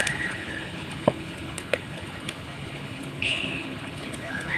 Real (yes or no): no